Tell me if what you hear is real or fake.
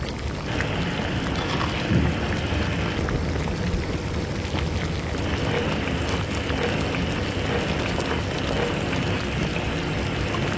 real